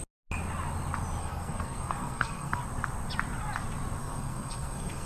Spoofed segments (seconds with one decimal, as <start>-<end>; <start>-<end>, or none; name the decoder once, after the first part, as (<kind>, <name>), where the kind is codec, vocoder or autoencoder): 1.2-2.6 (codec, SNAC); 4.0-5.1